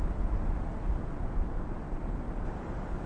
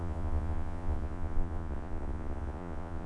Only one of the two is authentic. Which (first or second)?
first